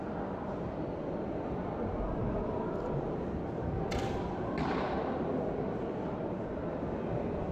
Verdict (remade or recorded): recorded